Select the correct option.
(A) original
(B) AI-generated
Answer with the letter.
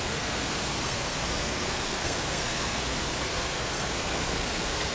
B